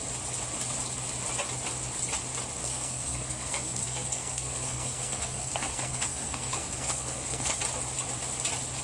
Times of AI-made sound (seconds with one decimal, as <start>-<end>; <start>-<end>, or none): 2.6-7.6